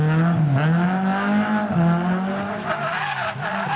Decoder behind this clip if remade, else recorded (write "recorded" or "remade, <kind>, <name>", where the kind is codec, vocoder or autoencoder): recorded